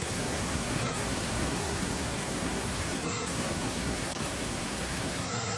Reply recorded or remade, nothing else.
remade